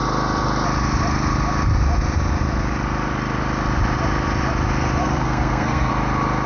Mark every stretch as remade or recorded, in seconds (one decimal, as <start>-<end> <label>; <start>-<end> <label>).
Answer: 0.0-5.0 recorded; 5.0-5.9 remade; 5.9-6.5 recorded